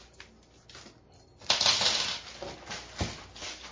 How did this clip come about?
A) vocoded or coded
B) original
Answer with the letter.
B